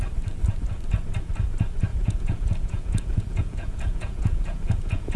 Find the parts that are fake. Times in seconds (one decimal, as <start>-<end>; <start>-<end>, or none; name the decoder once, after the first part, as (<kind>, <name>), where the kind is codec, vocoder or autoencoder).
1.9-5.2 (vocoder, Vocos)

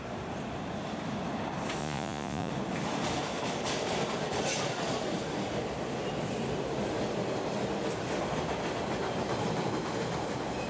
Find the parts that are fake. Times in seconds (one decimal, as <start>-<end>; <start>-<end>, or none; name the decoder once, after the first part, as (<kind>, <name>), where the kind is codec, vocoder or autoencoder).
1.8-2.5 (vocoder, Vocos)

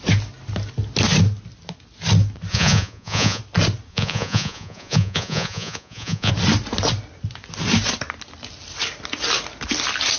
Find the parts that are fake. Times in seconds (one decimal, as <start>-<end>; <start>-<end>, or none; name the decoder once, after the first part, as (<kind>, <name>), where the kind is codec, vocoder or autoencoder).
2.5-3.4 (vocoder, Vocos); 3.9-6.3

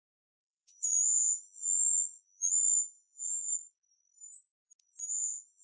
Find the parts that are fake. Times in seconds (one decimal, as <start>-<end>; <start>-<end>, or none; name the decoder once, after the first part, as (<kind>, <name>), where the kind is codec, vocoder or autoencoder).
0.0-3.5 (vocoder, Vocos); 5.1-5.6

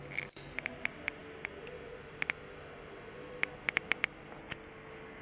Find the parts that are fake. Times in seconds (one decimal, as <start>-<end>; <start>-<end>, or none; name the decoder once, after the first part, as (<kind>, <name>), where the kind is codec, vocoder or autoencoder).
none

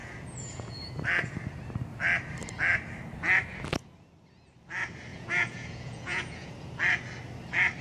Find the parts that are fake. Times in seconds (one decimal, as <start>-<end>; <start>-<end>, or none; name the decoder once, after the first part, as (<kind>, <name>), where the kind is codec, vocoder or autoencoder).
0.0-0.9 (vocoder, Vocos); 5.1-6.5

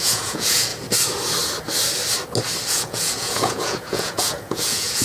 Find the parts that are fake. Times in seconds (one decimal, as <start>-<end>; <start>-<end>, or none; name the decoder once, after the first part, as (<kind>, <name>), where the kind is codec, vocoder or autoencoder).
0.0-0.7 (vocoder, Vocos); 2.7-5.0